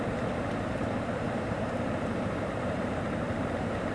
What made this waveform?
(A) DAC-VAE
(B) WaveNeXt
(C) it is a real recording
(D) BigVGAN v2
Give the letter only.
D